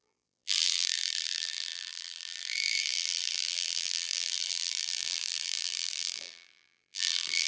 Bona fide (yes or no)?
no